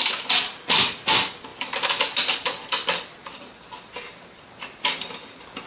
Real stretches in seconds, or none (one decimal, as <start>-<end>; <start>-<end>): none